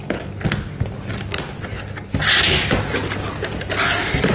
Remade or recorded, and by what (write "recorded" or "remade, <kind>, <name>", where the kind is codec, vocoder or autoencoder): recorded